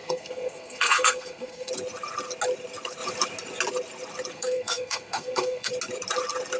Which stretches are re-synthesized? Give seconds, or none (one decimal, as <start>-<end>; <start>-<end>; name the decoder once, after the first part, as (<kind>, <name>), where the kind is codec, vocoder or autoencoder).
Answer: 0.0-1.7 (codec, SNAC); 4.3-5.7